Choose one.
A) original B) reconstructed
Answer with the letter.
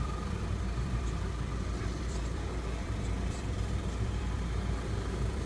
B